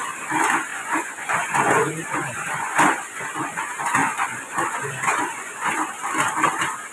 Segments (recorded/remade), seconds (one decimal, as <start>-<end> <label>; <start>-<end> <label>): 0.0-0.7 recorded; 0.7-3.6 remade; 3.6-4.0 recorded; 4.0-5.7 remade; 5.7-6.9 recorded